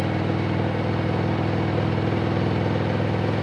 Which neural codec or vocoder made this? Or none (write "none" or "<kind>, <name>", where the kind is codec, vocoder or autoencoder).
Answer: none